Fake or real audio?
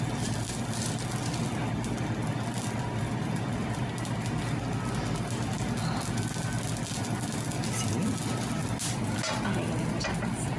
real